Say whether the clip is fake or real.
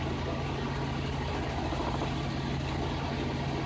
real